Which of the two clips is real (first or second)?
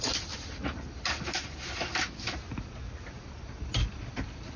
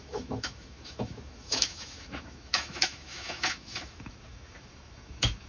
first